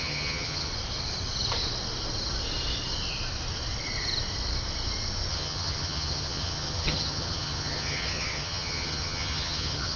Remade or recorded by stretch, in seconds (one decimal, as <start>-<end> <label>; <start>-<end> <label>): 0.0-0.7 remade; 0.7-5.3 recorded; 5.3-10.0 remade